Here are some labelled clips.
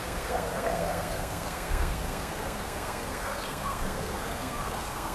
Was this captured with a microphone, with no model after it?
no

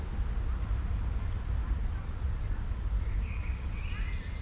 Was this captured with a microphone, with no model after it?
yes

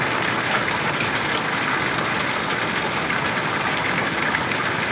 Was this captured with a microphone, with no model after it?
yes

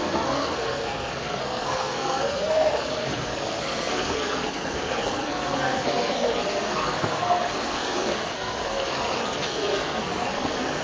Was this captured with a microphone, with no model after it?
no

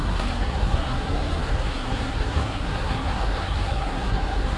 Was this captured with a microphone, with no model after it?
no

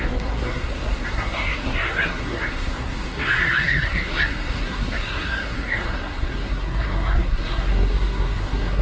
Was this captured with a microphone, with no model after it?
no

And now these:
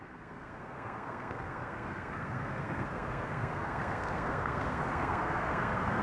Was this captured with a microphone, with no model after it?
no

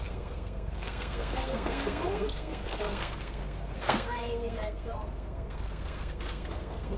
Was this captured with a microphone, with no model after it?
no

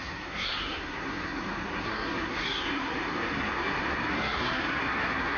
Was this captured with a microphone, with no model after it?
no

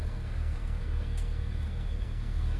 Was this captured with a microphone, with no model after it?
no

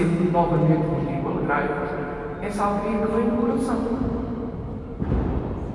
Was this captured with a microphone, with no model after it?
yes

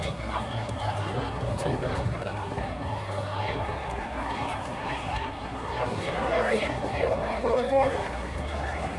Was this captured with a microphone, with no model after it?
no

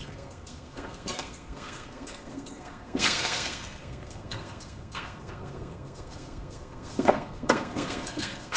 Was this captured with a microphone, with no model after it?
no